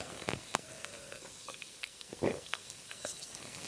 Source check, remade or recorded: remade